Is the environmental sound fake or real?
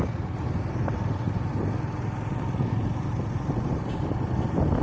real